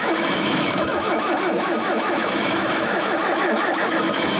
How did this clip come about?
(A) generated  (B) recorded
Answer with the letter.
A